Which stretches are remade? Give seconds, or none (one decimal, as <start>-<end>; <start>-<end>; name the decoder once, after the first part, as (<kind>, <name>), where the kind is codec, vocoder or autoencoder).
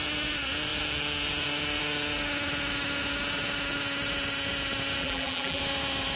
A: 5.0-5.6 (vocoder, BigVGAN v2)